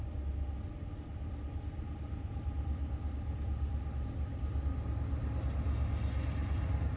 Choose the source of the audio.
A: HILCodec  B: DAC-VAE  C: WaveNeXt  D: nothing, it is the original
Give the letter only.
D